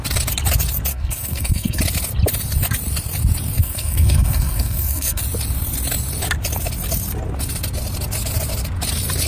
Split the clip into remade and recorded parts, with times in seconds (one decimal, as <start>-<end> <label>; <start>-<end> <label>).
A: 0.0-0.9 recorded; 0.9-1.8 remade; 1.8-3.6 recorded; 3.6-5.2 remade; 5.2-9.3 recorded